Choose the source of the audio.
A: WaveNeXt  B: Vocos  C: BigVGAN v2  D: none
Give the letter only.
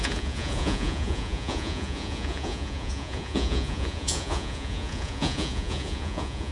B